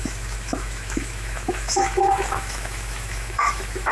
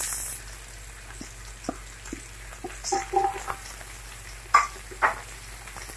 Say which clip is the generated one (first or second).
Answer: first